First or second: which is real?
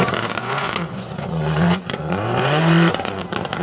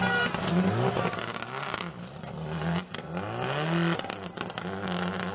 second